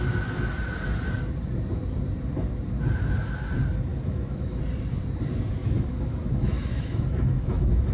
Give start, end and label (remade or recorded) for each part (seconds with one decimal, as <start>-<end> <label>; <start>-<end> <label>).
0.0-3.9 recorded; 3.9-4.6 remade; 4.6-5.6 recorded; 5.6-7.9 remade